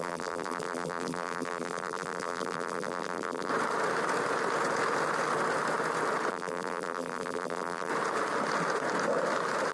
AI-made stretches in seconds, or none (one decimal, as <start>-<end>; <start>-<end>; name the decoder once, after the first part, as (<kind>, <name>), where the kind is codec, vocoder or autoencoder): 0.0-3.5 (vocoder, BigVGAN v2); 6.3-7.9